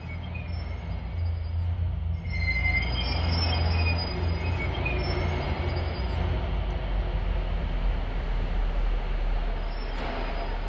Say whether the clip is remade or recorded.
recorded